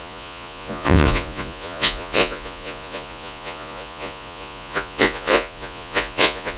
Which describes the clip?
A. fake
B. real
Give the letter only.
A